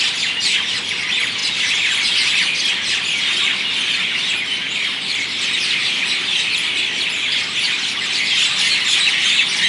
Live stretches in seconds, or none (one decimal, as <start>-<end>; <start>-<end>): 0.0-9.7